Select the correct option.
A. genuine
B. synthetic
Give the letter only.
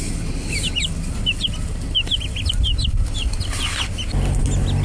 A